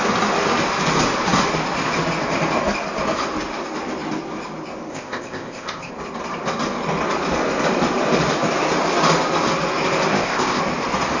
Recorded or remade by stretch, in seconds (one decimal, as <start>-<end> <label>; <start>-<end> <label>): 0.0-4.9 recorded; 4.9-5.9 remade; 5.9-10.1 recorded; 10.1-10.6 remade; 10.6-11.2 recorded

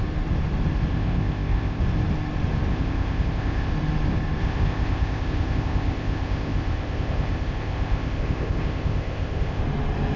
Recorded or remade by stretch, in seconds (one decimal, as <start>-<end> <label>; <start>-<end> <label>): 0.0-0.9 recorded; 0.9-1.8 remade; 1.8-2.7 recorded; 2.7-3.7 remade; 3.7-4.4 recorded; 4.4-9.6 remade; 9.6-10.2 recorded

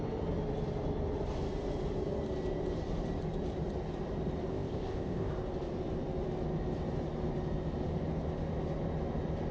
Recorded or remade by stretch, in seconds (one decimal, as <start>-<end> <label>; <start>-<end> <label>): 0.0-4.5 recorded; 4.5-5.3 remade; 5.3-9.5 recorded

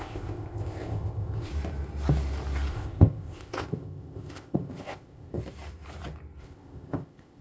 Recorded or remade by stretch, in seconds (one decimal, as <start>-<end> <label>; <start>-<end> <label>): 0.0-1.5 remade; 1.5-2.7 recorded; 2.7-5.4 remade; 5.4-6.4 recorded; 6.4-7.4 remade

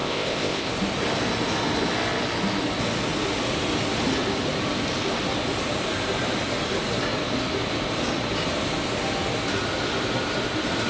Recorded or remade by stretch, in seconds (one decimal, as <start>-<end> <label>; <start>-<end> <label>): 0.0-0.7 remade; 0.7-10.9 recorded

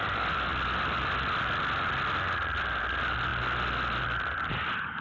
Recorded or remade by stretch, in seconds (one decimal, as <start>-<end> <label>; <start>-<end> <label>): 0.0-5.0 recorded

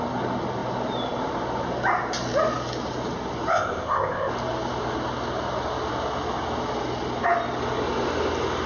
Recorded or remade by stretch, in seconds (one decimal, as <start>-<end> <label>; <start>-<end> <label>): 0.0-3.5 recorded; 3.5-4.3 remade; 4.3-8.7 recorded